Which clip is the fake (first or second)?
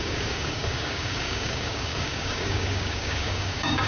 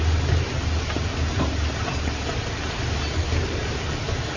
first